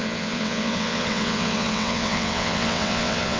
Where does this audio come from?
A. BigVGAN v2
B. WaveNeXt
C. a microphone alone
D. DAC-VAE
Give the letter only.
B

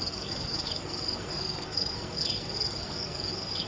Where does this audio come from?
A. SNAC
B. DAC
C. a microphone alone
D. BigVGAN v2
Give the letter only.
A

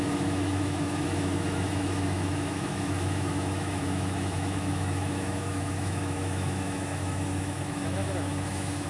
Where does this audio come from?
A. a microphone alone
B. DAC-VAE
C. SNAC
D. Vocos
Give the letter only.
B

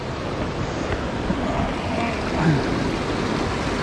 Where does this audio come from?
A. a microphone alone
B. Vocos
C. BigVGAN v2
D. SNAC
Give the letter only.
A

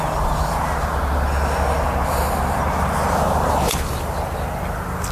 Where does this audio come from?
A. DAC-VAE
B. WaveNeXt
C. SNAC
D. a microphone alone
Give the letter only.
D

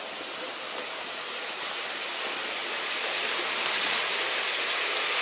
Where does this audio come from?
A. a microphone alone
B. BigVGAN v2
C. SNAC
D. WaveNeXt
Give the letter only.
B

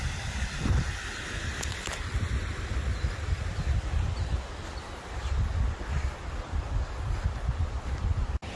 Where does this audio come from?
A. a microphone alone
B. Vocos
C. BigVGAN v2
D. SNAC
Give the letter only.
A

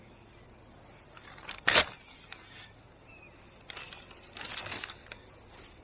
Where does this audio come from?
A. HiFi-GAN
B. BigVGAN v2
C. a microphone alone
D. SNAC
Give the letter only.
C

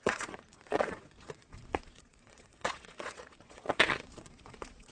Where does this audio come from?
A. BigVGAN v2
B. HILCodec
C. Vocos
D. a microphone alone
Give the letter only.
C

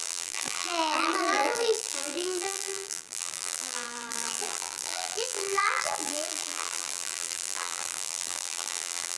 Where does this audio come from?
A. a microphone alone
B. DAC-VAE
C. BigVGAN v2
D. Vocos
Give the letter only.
C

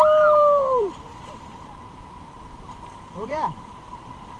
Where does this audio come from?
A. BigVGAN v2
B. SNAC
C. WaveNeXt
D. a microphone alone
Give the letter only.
A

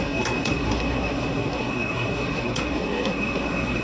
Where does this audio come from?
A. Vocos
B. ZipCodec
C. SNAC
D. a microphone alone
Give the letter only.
C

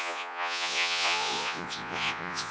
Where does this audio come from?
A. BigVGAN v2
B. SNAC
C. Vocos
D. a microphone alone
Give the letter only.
C